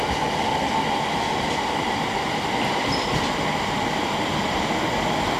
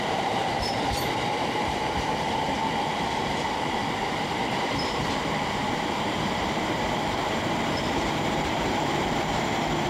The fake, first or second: second